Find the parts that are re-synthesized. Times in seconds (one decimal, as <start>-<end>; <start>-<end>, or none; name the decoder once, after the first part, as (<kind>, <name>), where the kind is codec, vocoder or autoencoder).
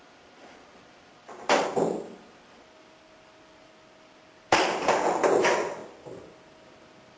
none